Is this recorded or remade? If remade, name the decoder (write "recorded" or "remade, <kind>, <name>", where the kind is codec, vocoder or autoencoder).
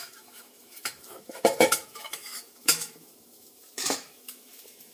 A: remade, autoencoder, DAC-VAE